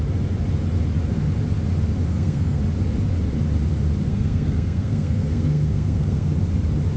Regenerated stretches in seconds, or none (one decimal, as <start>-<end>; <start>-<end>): 2.1-2.6; 4.1-6.3